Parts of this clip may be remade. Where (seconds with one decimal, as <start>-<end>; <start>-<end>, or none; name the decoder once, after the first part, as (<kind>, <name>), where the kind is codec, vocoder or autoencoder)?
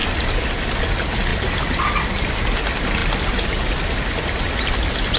none